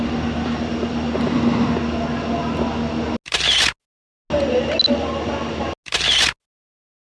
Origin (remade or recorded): recorded